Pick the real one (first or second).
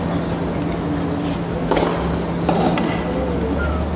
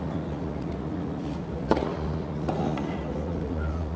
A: first